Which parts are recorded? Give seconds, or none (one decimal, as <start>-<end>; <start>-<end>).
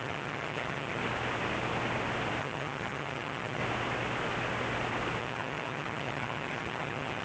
1.0-2.4; 3.6-5.2